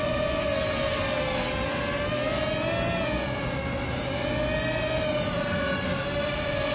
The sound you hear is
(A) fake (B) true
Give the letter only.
B